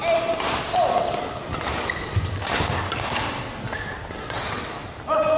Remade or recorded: recorded